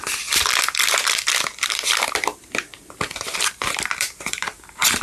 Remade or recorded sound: remade